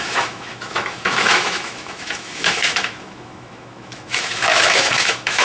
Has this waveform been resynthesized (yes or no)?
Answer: yes